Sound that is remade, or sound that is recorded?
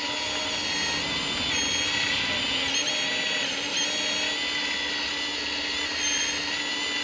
recorded